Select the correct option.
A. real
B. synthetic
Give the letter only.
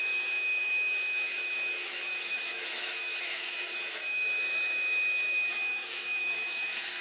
B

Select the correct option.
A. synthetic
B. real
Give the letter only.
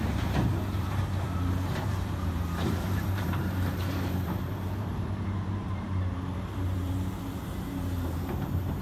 A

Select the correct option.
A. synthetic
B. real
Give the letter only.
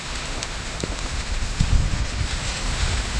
A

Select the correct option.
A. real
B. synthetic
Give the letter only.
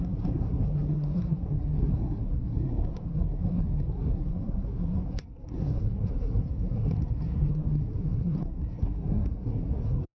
B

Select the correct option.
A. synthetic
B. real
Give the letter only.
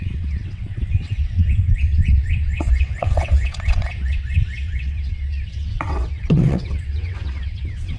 A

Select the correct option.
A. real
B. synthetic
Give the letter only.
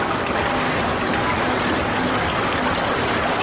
A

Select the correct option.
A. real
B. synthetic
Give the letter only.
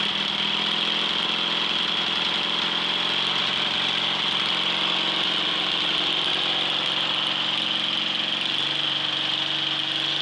A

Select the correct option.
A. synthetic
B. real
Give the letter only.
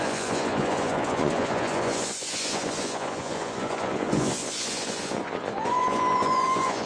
A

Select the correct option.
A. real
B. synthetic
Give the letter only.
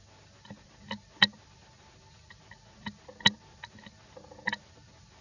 A